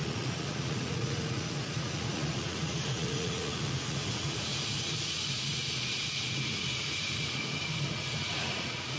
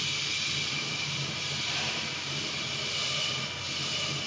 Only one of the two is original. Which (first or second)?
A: second